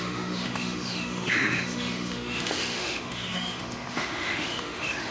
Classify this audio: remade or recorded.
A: remade